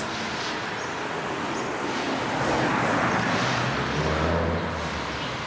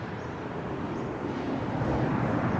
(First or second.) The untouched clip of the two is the first